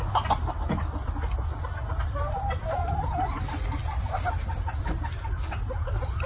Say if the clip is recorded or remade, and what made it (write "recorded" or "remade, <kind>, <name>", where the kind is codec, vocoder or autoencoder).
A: recorded